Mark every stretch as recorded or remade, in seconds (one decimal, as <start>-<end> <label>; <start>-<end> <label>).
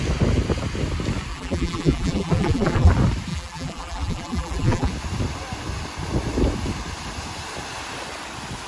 0.0-1.3 recorded; 1.3-2.9 remade; 2.9-3.3 recorded; 3.3-4.9 remade; 4.9-8.7 recorded